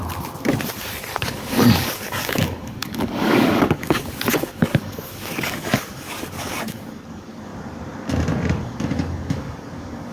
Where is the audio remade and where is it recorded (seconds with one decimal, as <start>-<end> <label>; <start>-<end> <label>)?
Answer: 0.0-1.2 recorded; 1.2-7.5 remade; 7.5-8.6 recorded; 8.6-10.1 remade